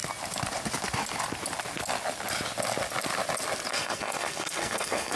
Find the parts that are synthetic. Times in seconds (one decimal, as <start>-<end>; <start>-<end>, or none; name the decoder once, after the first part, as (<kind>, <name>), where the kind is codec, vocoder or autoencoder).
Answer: 3.7-5.2 (codec, SNAC)